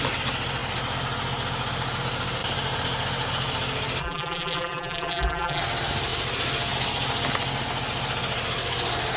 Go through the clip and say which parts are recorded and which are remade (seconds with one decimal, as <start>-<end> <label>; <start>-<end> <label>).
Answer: 0.0-4.0 recorded; 4.0-5.6 remade; 5.6-9.2 recorded